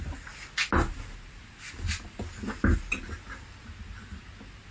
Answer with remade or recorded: recorded